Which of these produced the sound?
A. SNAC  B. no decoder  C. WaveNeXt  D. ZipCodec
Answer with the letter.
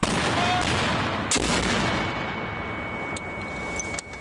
B